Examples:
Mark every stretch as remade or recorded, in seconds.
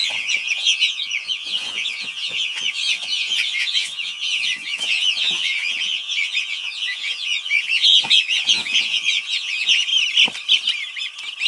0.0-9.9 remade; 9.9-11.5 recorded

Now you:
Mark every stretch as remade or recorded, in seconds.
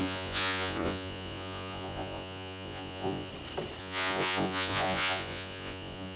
0.0-3.3 remade; 3.3-3.8 recorded; 3.8-6.2 remade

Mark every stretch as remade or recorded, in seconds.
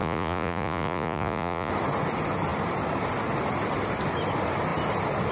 0.0-1.7 remade; 1.7-5.3 recorded